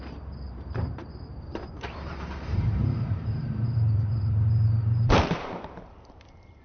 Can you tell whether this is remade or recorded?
remade